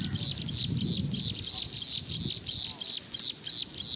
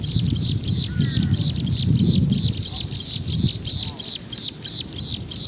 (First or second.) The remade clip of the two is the second